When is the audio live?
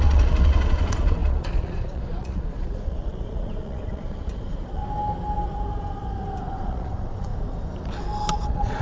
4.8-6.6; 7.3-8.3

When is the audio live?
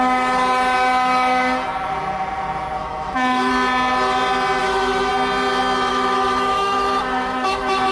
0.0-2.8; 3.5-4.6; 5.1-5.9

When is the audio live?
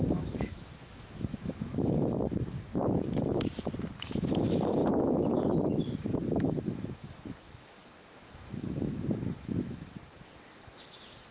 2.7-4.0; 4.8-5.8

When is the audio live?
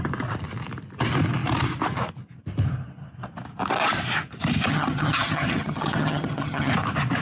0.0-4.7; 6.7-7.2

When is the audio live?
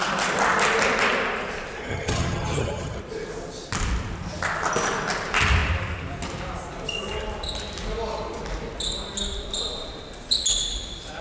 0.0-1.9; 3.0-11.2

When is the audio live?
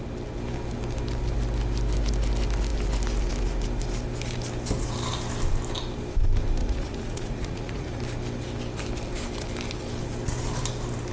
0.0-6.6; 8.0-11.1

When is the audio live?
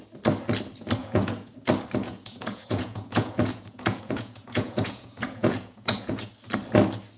0.0-1.0; 1.5-2.0; 6.3-7.2